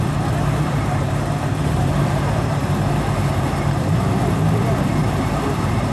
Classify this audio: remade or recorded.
remade